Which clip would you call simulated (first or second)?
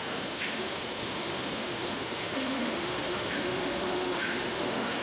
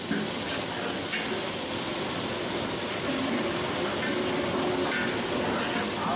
first